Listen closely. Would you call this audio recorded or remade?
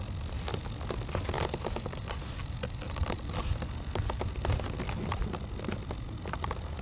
recorded